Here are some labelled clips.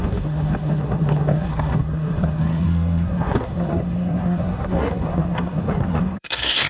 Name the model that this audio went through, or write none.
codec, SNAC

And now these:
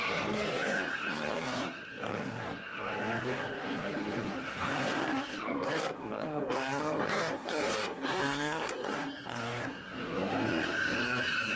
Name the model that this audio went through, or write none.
codec, SNAC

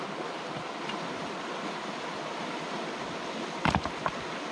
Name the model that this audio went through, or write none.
none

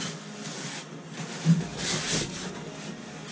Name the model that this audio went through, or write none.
none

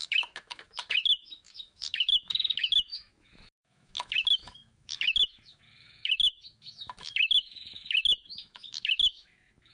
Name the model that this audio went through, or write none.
autoencoder, DAC-VAE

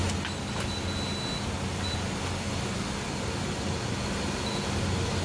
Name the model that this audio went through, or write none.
none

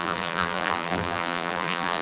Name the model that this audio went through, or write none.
vocoder, BigVGAN v2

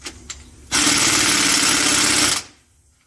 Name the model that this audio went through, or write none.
none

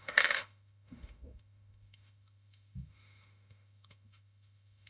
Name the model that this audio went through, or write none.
autoencoder, DAC-VAE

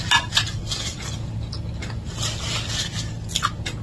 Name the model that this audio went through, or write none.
none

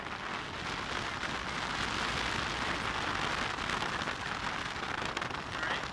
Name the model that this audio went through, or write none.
none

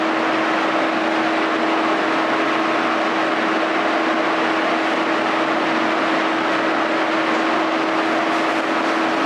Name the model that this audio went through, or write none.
none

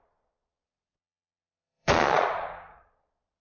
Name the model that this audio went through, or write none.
vocoder, Vocos